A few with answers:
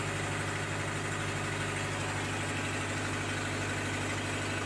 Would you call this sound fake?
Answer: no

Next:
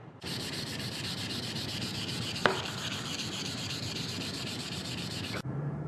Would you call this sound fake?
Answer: yes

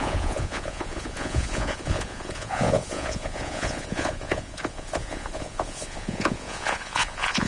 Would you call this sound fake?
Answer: yes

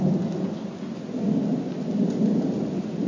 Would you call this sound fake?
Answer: no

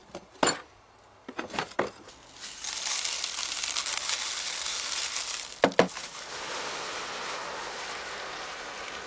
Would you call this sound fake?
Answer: no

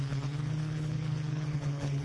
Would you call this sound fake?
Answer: yes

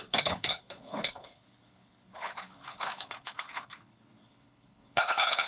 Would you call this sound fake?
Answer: yes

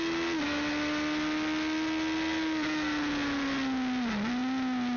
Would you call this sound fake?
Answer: no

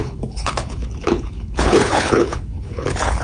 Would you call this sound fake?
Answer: yes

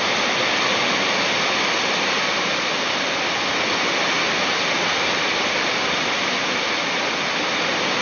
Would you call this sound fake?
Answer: no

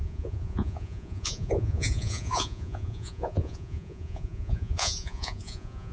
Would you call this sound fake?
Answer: yes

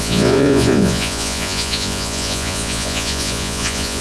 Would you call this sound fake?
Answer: yes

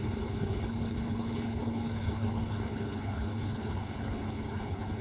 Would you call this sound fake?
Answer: yes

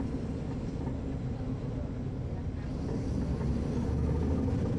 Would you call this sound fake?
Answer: no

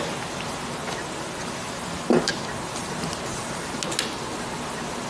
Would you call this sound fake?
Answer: no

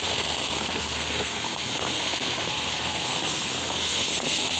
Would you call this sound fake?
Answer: yes